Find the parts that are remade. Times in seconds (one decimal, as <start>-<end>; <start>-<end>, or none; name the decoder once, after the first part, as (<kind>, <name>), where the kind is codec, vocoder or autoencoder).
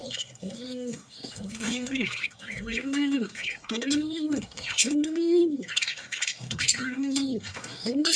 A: 0.0-8.2 (codec, SNAC)